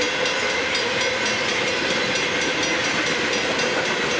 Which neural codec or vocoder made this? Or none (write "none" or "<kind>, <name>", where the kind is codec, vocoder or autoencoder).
none